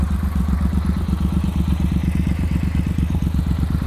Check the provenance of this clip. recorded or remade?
recorded